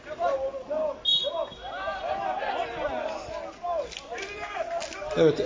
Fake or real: real